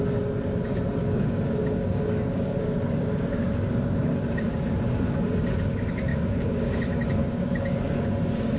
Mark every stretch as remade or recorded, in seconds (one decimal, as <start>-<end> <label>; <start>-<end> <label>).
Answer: 0.0-1.0 recorded; 1.0-5.2 remade; 5.2-6.1 recorded; 6.1-6.8 remade; 6.8-7.2 recorded; 7.2-8.0 remade; 8.0-8.6 recorded